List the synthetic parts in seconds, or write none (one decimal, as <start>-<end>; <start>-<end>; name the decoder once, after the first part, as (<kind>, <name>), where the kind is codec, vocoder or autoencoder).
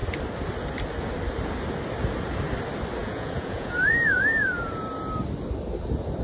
3.0-4.8 (vocoder, Vocos)